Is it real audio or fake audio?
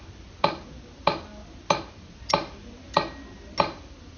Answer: real